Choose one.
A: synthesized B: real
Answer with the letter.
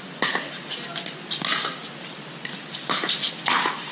B